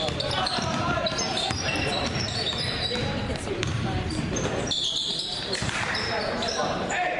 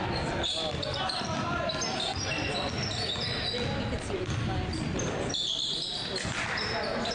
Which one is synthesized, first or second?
first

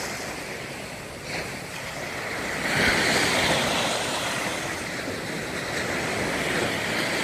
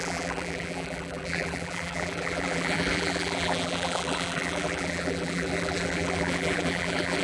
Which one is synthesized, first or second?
second